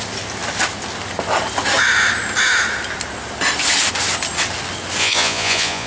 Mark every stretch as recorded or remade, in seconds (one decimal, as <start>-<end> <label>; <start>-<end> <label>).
0.0-5.0 recorded; 5.0-5.9 remade